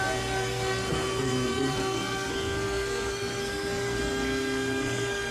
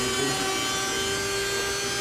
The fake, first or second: first